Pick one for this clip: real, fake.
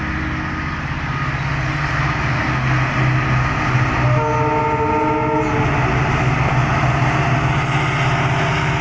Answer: real